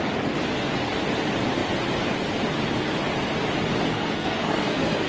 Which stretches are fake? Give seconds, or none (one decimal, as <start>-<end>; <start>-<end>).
3.9-5.1